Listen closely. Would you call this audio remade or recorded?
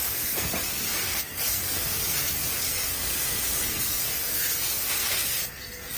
remade